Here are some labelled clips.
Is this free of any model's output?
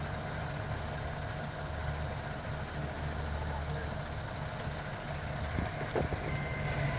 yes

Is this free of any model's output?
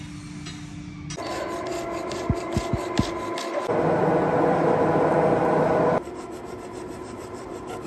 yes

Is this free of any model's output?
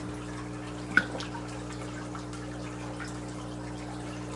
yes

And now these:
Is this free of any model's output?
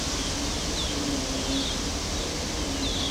yes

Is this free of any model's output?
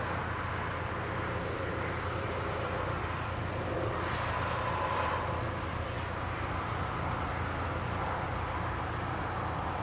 yes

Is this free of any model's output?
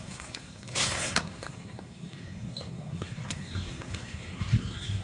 no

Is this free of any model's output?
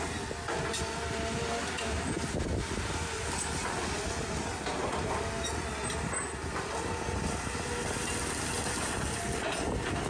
yes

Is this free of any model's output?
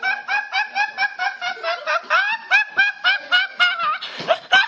yes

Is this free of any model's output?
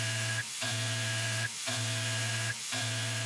yes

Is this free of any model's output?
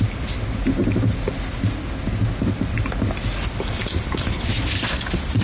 yes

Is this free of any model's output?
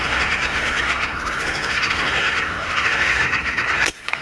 no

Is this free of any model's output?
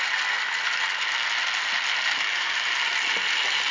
yes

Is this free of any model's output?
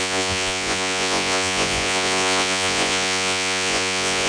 no